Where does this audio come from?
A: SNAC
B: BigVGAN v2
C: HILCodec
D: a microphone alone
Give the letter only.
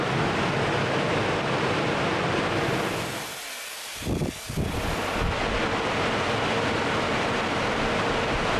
D